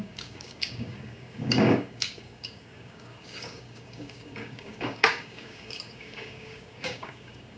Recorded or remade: remade